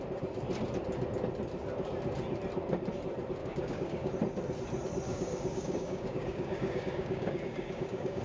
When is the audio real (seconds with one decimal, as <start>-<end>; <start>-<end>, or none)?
0.0-3.4; 4.1-5.1